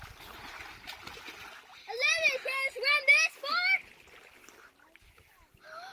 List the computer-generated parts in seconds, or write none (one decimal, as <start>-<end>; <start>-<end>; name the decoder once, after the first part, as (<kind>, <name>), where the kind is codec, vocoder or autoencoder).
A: none